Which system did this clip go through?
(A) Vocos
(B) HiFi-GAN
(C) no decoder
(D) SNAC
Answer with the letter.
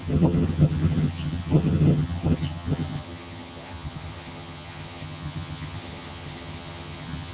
B